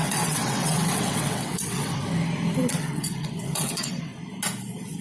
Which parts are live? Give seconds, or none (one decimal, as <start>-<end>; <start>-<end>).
2.0-2.7; 4.1-5.0